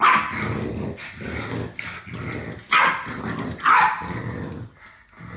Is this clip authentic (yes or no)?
yes